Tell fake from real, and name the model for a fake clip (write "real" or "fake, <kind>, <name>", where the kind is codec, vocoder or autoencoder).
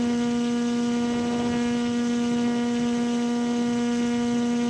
real